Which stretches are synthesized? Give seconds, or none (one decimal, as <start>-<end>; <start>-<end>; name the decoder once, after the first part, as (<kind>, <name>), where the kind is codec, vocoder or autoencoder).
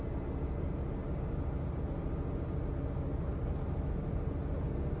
none